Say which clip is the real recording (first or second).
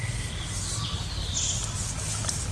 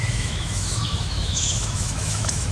first